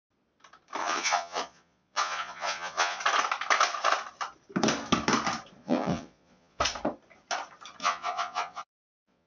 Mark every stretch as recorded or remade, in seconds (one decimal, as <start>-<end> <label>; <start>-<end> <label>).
0.0-0.8 recorded; 0.8-3.0 remade; 3.0-5.6 recorded; 5.6-6.6 remade; 6.6-7.8 recorded; 7.8-9.3 remade